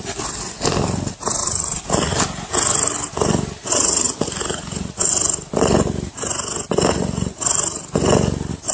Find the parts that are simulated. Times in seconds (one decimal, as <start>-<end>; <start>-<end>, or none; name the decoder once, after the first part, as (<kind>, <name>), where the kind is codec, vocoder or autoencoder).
1.4-2.1 (vocoder, Vocos); 3.7-5.1

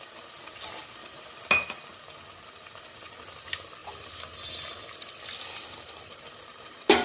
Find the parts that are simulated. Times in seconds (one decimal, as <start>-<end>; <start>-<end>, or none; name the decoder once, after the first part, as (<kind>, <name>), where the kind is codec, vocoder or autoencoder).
none

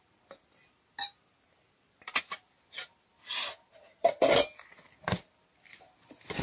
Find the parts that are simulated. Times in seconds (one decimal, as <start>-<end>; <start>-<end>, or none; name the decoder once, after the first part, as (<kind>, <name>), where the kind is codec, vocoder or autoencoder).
none